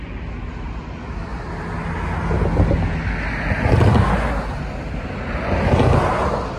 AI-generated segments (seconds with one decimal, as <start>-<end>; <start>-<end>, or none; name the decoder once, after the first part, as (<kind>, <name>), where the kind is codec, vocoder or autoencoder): none